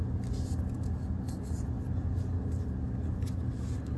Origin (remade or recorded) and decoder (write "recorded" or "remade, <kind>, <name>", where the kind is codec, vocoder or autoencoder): recorded